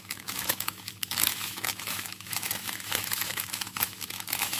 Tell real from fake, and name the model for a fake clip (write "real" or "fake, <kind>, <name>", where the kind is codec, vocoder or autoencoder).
fake, autoencoder, DAC-VAE